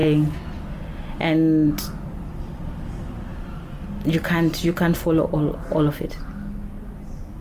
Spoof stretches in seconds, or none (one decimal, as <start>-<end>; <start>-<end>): none